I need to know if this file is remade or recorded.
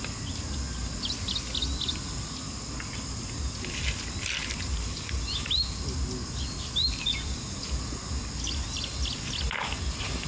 recorded